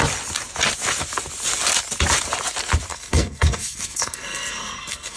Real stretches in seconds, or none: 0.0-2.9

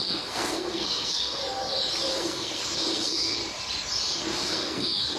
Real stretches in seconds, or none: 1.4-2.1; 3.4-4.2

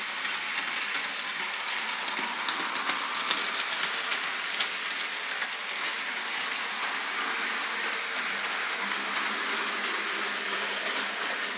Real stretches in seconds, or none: 0.0-11.6